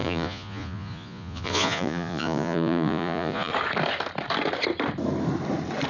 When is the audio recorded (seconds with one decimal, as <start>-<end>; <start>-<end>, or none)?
3.5-5.9